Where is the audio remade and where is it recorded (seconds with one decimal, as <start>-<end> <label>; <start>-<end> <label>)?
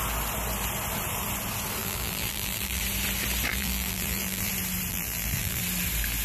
0.0-1.8 recorded; 1.8-2.8 remade; 2.8-3.5 recorded; 3.5-4.5 remade; 4.5-4.9 recorded; 4.9-5.6 remade; 5.6-6.2 recorded